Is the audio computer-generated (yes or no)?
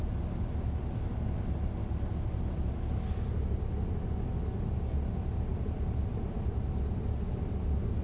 no